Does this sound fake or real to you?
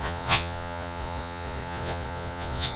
fake